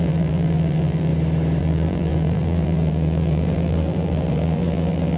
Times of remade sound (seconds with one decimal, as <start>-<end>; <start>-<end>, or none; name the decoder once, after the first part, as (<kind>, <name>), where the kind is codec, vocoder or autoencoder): 0.0-1.1 (vocoder, BigVGAN v2); 1.6-5.2